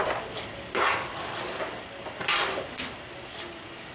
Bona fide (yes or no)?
yes